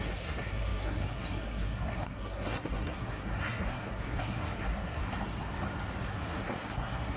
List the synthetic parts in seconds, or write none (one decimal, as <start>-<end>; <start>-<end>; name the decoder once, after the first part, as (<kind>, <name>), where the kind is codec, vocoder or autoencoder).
0.0-5.0 (codec, SNAC); 6.1-7.2